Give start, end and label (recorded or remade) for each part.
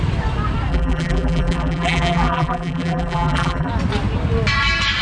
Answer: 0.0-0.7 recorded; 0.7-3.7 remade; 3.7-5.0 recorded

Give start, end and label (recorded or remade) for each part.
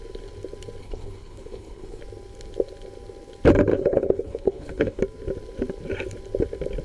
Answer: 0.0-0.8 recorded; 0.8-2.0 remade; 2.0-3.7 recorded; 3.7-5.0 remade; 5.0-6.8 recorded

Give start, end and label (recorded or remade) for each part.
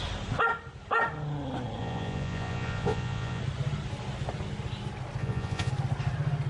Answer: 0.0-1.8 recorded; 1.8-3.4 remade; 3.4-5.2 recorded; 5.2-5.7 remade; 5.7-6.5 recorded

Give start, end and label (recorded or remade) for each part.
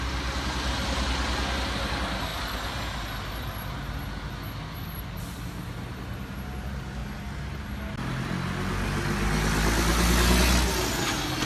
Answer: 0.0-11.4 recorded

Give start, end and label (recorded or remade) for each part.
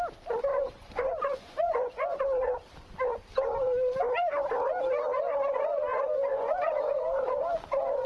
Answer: 0.0-0.5 recorded; 0.5-2.2 remade; 2.2-6.3 recorded; 6.3-6.8 remade; 6.8-8.1 recorded